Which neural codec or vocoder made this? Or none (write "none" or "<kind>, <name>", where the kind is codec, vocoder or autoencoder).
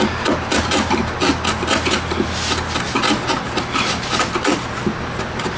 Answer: none